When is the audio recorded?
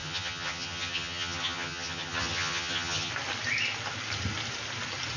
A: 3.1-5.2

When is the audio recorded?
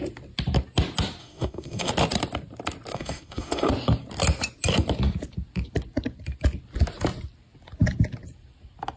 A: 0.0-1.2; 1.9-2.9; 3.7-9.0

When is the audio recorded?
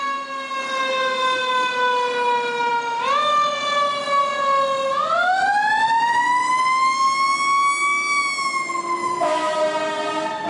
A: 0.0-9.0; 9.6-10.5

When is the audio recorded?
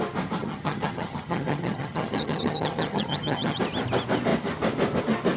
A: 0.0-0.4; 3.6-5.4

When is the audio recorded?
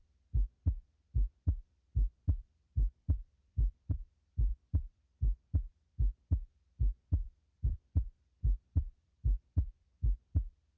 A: 0.0-1.9; 4.1-4.5; 5.9-7.2; 9.9-10.8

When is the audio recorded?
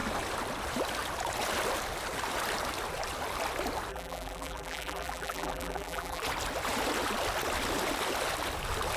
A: 0.0-3.9; 6.2-9.0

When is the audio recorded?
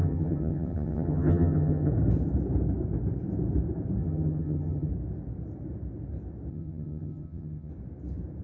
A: 1.9-4.0; 4.9-6.5; 7.7-8.4